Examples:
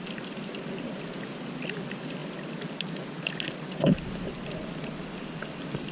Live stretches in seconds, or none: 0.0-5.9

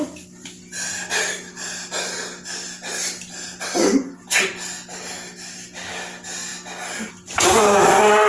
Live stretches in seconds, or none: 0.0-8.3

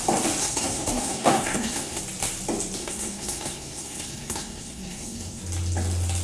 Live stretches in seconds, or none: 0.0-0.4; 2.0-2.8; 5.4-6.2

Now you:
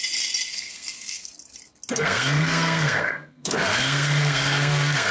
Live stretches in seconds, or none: 0.0-0.5; 1.3-1.9